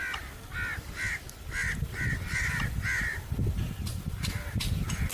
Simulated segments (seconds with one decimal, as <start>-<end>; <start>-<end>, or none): 1.6-5.1